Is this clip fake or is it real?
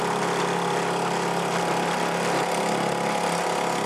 real